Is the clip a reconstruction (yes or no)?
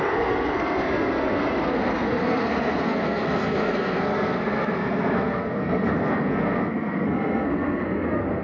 yes